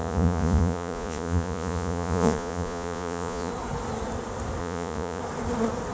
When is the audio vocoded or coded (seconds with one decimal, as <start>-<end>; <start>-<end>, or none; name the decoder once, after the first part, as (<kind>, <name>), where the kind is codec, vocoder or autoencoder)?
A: 0.0-3.5 (vocoder, Vocos); 4.6-5.2